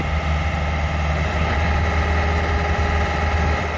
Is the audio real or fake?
real